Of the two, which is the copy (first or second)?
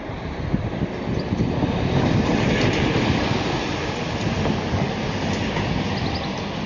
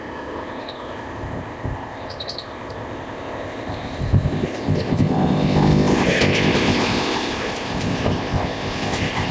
second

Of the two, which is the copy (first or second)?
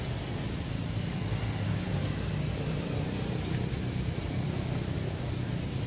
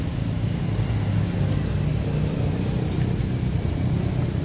first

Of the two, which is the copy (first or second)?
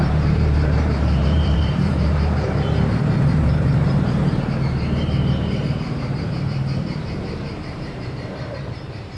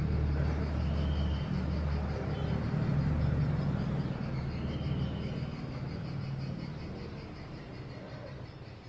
first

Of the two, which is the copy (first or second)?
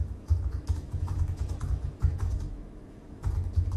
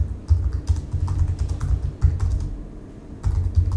first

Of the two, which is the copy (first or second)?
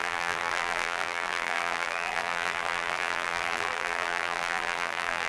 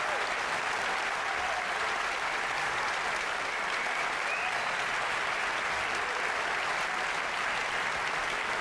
first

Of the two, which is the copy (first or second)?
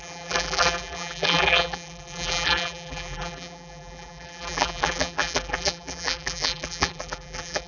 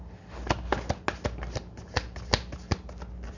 first